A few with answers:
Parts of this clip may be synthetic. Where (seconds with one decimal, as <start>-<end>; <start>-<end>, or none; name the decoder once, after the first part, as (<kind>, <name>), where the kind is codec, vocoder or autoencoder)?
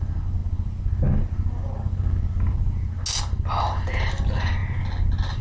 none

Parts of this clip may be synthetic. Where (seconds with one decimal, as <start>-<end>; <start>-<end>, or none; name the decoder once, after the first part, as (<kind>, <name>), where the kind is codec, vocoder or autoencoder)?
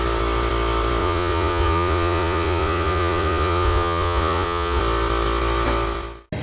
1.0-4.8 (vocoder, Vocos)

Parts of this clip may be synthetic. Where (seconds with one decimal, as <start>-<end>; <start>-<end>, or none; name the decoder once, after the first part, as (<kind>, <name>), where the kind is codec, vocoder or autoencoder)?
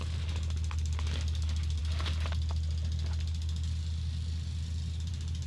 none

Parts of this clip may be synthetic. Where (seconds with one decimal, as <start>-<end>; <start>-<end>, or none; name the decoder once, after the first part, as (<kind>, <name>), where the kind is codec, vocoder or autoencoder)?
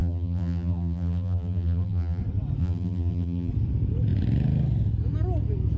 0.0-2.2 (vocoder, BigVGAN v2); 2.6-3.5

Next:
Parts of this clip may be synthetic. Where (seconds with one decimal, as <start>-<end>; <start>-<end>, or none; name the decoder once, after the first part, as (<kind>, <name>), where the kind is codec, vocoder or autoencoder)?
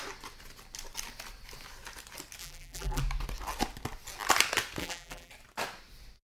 2.4-3.0 (vocoder, BigVGAN v2); 4.8-5.3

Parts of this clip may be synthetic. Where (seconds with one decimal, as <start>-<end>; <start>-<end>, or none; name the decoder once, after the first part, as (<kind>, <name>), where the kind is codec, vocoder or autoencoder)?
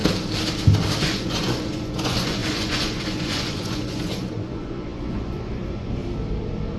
1.0-6.0 (vocoder, Vocos)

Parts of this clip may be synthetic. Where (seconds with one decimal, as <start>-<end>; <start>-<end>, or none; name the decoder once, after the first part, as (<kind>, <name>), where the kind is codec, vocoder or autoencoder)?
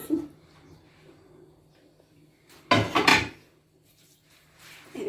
0.0-1.3 (vocoder, BigVGAN v2); 3.1-5.1